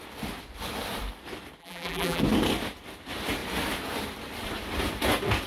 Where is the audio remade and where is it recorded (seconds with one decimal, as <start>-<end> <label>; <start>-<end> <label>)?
0.0-1.6 recorded; 1.6-2.2 remade; 2.2-5.5 recorded